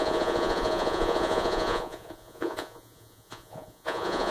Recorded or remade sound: remade